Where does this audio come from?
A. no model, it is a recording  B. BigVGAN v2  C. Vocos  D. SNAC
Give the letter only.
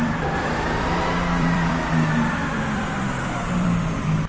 B